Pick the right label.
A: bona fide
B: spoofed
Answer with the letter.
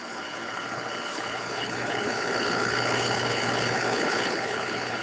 B